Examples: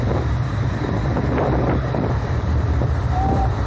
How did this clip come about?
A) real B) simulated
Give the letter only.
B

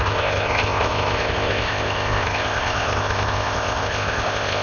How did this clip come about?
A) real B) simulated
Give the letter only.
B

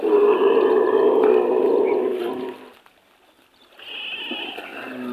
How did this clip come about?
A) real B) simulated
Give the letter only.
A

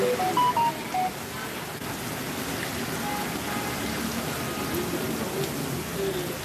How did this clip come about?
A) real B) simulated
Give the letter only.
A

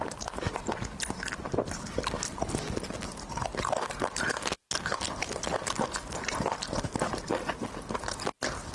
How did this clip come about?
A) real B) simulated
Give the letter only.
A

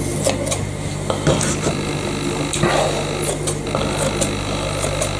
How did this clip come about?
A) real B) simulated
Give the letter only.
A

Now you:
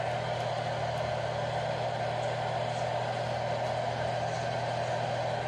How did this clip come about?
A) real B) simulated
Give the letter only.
A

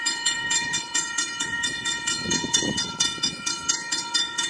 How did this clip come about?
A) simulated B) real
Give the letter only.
A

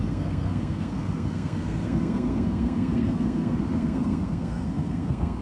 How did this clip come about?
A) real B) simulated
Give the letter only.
B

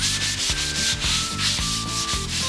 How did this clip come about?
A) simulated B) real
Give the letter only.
B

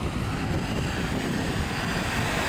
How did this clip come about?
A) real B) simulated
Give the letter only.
A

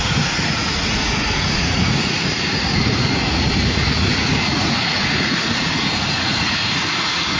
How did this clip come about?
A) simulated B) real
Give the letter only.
A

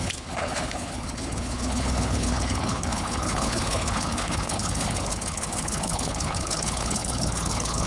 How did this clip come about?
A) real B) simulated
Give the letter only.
B